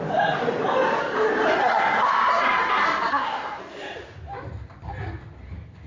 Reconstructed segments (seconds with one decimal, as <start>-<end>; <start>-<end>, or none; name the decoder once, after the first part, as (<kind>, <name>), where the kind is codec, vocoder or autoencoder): 1.6-2.1 (codec, SNAC); 3.1-3.6